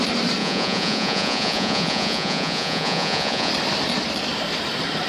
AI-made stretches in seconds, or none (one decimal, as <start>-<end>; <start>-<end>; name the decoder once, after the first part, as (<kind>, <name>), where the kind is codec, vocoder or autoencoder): 0.4-3.5 (vocoder, Vocos)

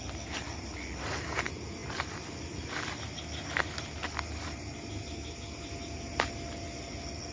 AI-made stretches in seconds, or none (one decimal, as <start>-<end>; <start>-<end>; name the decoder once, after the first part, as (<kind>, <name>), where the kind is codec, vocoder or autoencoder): none